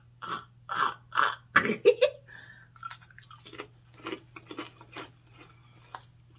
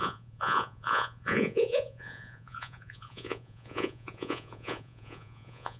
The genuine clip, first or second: first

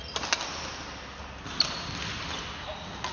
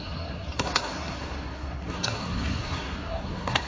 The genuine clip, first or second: first